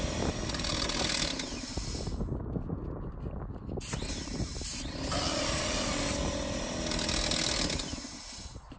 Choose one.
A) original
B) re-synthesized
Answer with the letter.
A